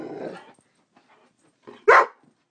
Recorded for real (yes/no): yes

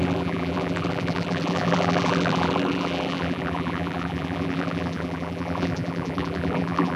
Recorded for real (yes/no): no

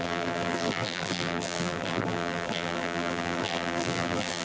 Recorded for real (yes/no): no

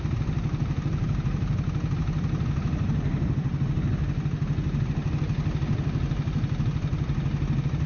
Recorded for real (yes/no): yes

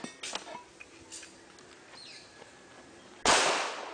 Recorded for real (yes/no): yes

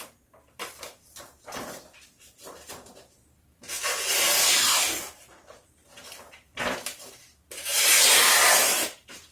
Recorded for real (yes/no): no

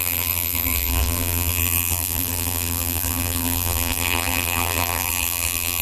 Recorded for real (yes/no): no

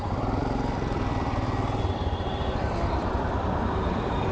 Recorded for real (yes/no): no